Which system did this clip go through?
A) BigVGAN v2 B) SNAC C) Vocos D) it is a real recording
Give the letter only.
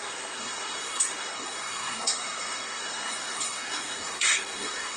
B